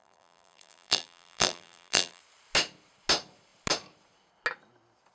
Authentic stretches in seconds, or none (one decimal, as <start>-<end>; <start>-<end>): 2.2-5.1